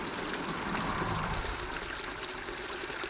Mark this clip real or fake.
real